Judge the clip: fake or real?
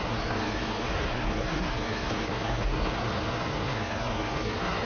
fake